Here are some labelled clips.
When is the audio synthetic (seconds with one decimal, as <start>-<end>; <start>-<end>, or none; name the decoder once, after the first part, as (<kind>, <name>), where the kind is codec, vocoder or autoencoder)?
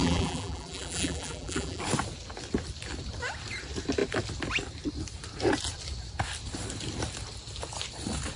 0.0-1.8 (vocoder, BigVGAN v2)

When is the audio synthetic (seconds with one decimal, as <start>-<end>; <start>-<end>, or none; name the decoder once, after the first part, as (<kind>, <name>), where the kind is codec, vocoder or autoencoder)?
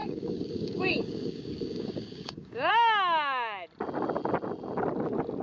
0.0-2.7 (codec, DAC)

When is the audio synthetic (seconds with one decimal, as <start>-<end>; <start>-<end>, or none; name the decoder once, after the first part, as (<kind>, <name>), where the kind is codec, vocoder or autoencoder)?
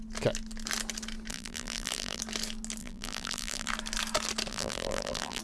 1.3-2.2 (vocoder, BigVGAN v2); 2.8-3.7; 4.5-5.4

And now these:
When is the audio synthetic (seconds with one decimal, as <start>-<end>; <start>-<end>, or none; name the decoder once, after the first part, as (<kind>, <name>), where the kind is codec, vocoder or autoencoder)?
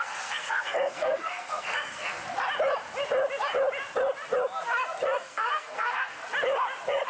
0.0-2.2 (codec, SNAC); 5.2-6.2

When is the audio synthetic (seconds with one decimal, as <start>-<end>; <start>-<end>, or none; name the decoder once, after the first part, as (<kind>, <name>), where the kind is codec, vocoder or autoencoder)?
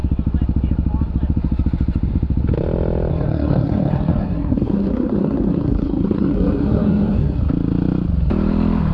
3.1-7.4 (codec, SNAC)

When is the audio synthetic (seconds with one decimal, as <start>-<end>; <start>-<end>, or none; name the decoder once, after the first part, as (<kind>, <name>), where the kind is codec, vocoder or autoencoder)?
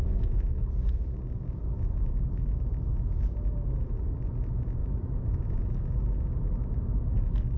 none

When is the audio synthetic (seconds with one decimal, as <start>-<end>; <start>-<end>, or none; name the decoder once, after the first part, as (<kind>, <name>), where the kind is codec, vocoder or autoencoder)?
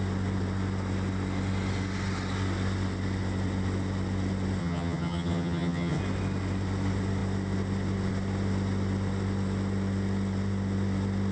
4.6-6.0 (vocoder, HiFi-GAN)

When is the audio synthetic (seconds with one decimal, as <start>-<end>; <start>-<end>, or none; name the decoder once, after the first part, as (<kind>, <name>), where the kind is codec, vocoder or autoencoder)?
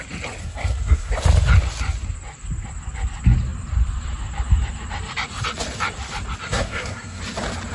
0.4-1.1 (codec, SNAC); 6.4-7.2